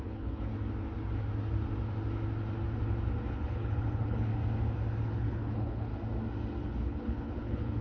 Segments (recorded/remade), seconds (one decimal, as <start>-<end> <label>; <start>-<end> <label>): 0.0-0.5 remade; 0.5-3.3 recorded; 3.3-4.3 remade; 4.3-5.0 recorded; 5.0-5.9 remade; 5.9-6.6 recorded; 6.6-7.8 remade